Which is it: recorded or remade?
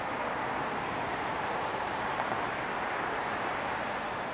recorded